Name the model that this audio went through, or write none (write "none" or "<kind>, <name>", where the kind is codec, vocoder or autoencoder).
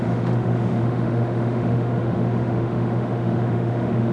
autoencoder, DAC-VAE